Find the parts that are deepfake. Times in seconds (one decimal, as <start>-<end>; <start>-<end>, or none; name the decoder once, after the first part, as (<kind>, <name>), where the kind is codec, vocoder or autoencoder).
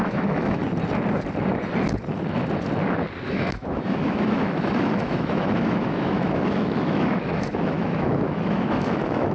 0.0-0.6 (autoencoder, DAC-VAE); 3.3-9.3